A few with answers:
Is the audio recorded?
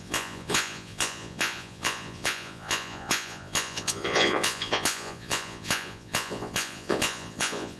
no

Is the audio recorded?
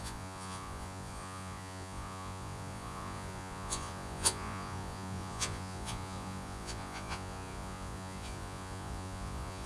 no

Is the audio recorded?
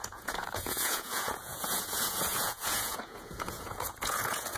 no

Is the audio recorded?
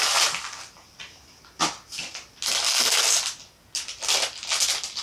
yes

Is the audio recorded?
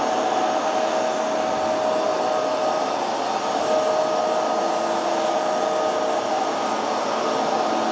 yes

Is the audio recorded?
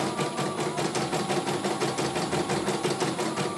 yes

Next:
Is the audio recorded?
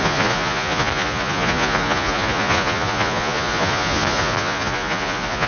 no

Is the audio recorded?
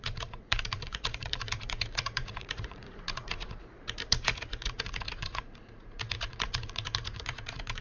no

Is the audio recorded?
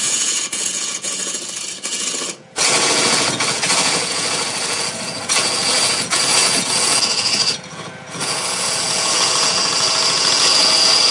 no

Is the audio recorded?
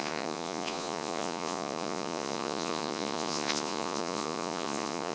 no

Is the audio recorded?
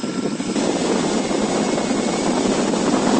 yes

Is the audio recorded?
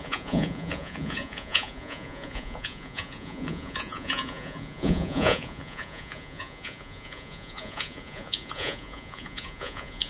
no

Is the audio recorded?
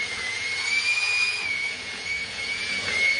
no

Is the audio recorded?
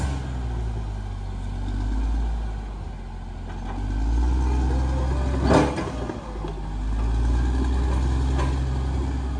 yes